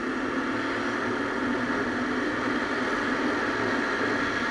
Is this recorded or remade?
recorded